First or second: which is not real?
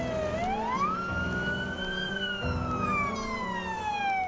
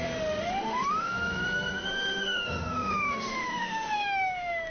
second